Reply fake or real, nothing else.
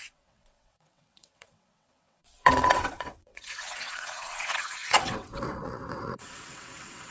fake